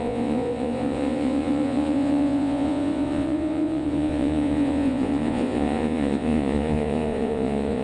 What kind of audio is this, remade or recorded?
remade